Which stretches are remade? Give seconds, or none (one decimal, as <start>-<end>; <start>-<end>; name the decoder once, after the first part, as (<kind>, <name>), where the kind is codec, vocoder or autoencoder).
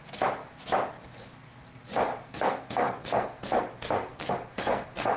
2.1-5.2 (codec, SNAC)